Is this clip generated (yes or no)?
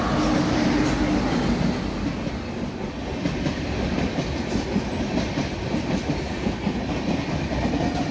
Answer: no